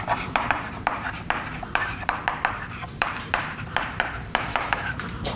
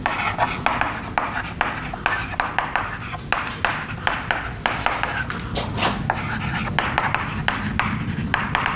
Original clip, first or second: second